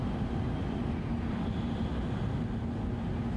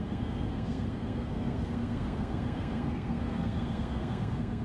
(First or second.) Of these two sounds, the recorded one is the first